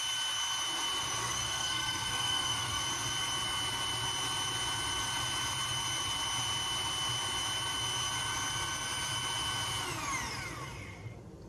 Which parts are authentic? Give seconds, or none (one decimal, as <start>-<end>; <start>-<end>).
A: 0.0-1.2; 2.8-11.5